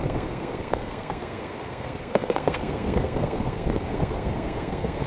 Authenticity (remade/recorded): remade